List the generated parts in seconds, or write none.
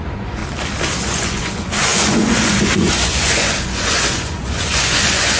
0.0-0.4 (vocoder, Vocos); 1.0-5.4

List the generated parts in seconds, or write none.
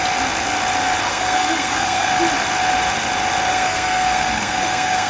1.1-2.2 (codec, SNAC); 3.5-5.1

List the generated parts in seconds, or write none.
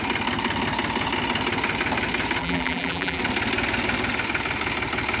2.4-3.2 (vocoder, BigVGAN v2)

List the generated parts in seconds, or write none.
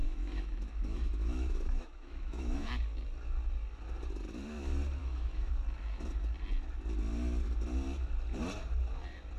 0.0-2.7 (autoencoder, DAC-VAE); 5.0-5.5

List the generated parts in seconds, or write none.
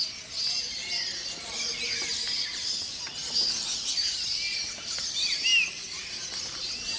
none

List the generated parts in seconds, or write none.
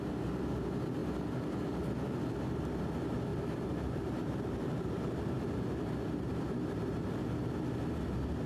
3.3-7.3 (vocoder, BigVGAN v2)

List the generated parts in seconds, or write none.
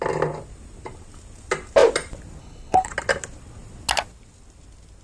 2.4-2.9 (codec, HILCodec)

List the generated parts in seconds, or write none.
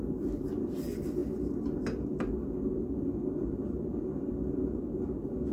none